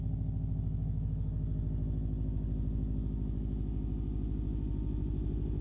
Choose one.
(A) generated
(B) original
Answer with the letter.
B